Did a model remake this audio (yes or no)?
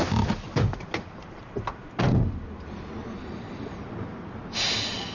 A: no